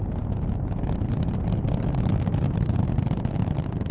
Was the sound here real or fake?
real